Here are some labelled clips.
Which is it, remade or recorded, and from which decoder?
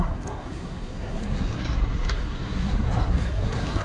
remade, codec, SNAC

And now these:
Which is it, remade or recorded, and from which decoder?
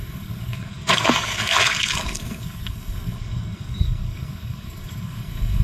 remade, codec, SNAC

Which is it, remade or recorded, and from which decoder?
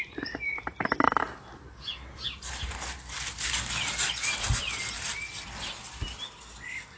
recorded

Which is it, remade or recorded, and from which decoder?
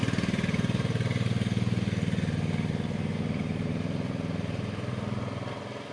recorded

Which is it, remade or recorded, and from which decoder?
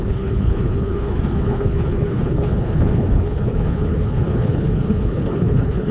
remade, codec, HILCodec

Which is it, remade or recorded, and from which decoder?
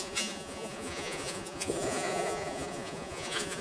remade, vocoder, Vocos